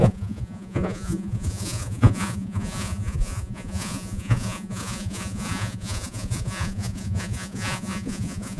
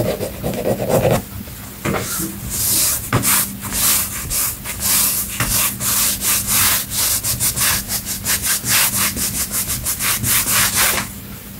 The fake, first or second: first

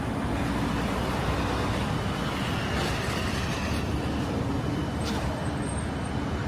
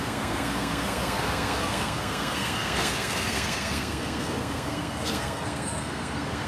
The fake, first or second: second